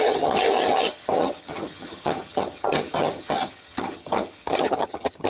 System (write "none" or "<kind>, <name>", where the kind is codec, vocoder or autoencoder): vocoder, HiFi-GAN